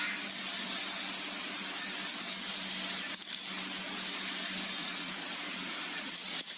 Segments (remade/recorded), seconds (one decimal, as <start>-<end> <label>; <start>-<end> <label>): 0.0-4.8 recorded; 4.8-6.6 remade